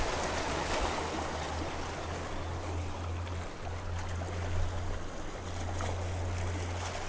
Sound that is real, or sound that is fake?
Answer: real